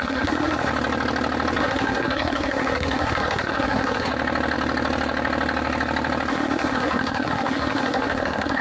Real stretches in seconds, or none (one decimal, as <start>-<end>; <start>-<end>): 0.7-1.6; 4.1-6.3